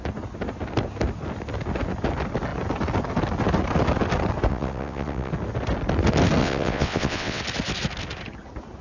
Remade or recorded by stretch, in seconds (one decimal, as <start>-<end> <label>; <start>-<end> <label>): 0.0-4.5 recorded; 4.5-5.3 remade; 5.3-6.4 recorded; 6.4-7.4 remade; 7.4-8.8 recorded